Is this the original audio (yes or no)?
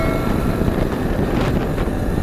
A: yes